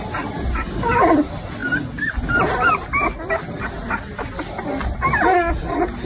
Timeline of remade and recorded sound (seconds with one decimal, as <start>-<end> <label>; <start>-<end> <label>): 0.0-6.0 recorded